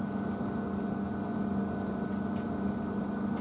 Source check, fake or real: real